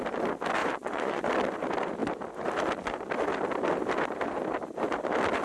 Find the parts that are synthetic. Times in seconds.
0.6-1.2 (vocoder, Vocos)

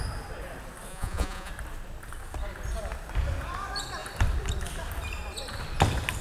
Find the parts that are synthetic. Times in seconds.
0.9-1.5 (vocoder, Vocos)

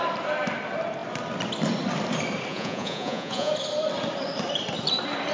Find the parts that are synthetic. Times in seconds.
2.5-3.5 (vocoder, Vocos)

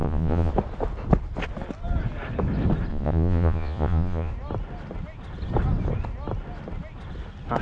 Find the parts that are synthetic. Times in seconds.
0.0-0.5 (vocoder, Vocos); 2.9-4.3

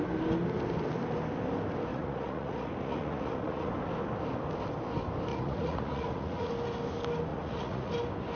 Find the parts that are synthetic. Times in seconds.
1.9-3.7 (vocoder, Vocos); 5.3-6.5; 7.3-7.9

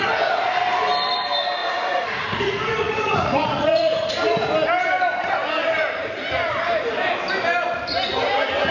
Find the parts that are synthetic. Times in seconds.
1.6-4.1 (vocoder, Vocos)

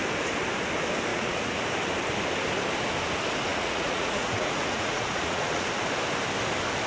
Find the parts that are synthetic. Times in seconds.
1.1-1.6 (vocoder, Vocos); 3.5-5.7

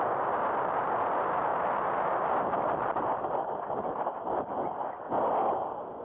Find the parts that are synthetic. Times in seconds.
none